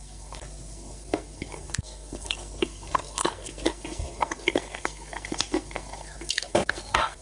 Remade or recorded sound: remade